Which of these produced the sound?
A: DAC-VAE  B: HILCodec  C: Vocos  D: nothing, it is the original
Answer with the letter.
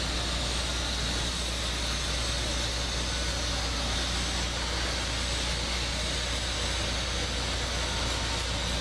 D